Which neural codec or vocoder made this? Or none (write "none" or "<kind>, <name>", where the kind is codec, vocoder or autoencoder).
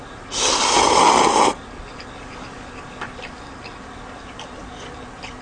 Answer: none